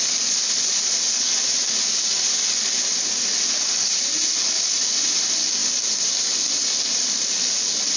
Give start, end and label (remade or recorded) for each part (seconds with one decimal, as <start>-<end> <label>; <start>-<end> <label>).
0.0-8.0 recorded